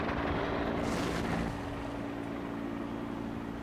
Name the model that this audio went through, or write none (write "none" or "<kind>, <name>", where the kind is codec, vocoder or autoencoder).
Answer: none